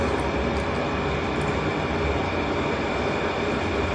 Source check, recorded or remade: recorded